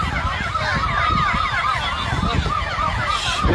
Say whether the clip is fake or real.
real